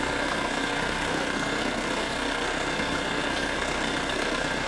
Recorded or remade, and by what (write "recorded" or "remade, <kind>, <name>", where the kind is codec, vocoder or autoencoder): remade, codec, SNAC